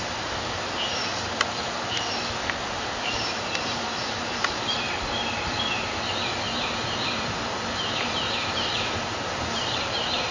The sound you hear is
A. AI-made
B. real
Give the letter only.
A